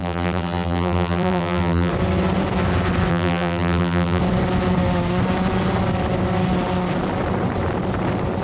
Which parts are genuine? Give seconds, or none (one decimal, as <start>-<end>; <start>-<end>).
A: 1.9-3.1; 4.2-8.4